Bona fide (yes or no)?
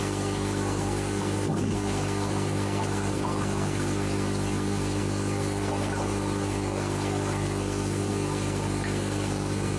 no